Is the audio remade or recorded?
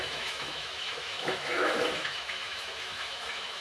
remade